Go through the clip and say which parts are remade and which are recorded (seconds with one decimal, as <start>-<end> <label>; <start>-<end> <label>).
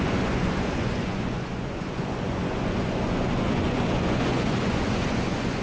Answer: 0.0-5.6 remade